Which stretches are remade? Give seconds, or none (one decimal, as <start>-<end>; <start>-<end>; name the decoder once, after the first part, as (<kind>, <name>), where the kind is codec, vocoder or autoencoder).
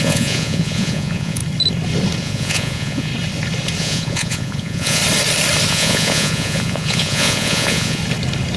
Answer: 0.0-1.4 (vocoder, Vocos); 2.2-3.1; 3.8-5.0; 5.7-8.0